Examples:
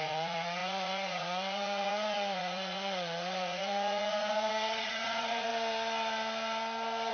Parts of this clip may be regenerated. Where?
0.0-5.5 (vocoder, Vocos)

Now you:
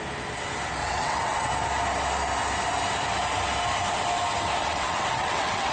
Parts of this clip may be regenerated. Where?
0.8-1.5 (vocoder, WaveNeXt); 4.6-5.7